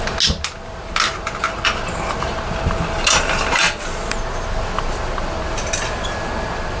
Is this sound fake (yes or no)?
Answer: no